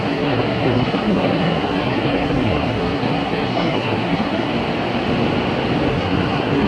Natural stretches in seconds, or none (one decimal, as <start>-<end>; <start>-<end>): 4.5-5.9